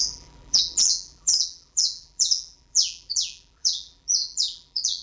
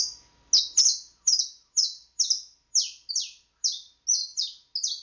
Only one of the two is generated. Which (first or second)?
first